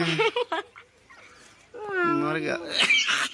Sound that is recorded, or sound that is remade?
recorded